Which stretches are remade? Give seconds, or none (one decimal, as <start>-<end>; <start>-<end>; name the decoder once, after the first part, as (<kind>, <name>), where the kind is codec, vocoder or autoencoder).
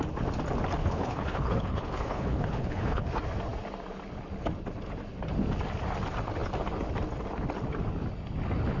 0.8-3.0 (codec, HILCodec)